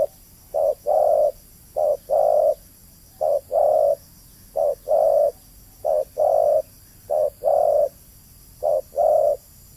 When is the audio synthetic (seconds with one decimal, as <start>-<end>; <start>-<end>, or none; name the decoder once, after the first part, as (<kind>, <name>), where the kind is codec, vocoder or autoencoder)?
2.8-3.4 (vocoder, BigVGAN v2)

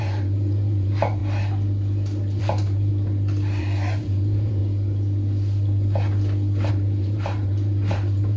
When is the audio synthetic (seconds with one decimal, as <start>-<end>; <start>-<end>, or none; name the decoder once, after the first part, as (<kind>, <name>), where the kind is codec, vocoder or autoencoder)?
0.0-1.2 (vocoder, BigVGAN v2); 2.4-2.9; 3.6-4.6; 6.7-8.4

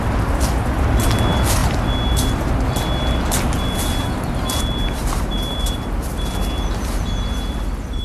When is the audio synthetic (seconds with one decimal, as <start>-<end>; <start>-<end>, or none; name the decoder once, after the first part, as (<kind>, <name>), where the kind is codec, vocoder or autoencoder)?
5.0-5.7 (vocoder, BigVGAN v2)

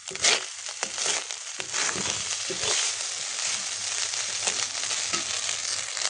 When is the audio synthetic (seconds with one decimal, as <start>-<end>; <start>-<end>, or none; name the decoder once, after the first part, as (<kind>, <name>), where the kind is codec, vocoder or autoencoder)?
none